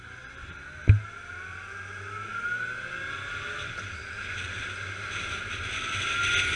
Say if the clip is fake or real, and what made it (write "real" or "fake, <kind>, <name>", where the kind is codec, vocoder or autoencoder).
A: real